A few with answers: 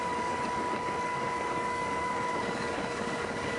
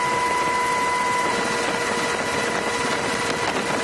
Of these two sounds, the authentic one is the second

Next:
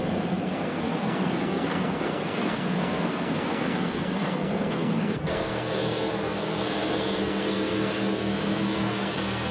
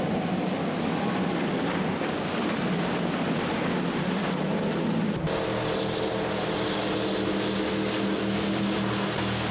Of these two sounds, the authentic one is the second